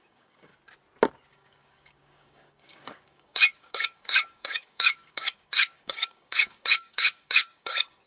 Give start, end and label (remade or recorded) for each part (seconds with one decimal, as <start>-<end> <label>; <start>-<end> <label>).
0.0-0.5 remade; 0.5-1.3 recorded; 1.3-8.1 remade